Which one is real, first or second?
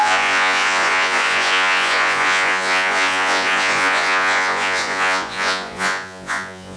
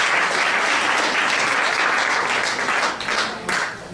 second